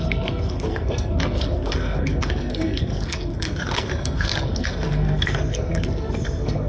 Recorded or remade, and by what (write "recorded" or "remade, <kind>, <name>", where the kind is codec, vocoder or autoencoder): remade, codec, SNAC